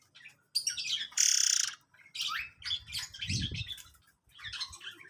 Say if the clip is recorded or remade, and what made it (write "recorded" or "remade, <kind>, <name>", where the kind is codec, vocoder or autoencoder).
recorded